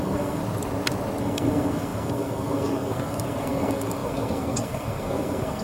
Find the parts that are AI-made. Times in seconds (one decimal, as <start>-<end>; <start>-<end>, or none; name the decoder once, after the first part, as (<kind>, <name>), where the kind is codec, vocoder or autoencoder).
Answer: 0.0-0.4 (codec, SNAC); 1.2-5.6